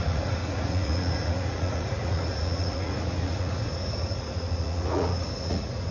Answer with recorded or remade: remade